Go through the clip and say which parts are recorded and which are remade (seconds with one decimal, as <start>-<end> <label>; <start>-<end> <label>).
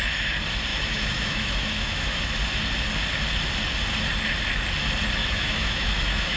0.0-0.7 recorded; 0.7-2.2 remade; 2.2-5.2 recorded; 5.2-6.4 remade